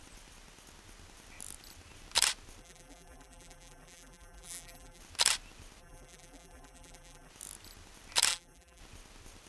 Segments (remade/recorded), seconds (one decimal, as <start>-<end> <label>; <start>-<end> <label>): 0.0-2.6 recorded; 2.6-5.0 remade; 5.0-5.8 recorded; 5.8-7.3 remade; 7.3-8.3 recorded; 8.3-8.8 remade; 8.8-9.5 recorded